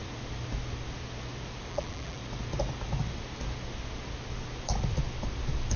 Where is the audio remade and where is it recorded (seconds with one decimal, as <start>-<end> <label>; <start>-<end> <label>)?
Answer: 0.0-1.7 recorded; 1.7-2.2 remade; 2.2-5.8 recorded